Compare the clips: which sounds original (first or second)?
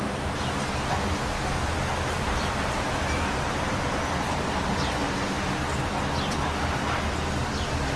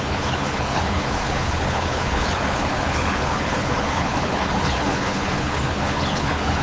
first